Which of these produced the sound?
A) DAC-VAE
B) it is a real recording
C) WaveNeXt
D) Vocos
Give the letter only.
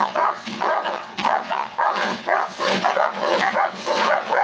C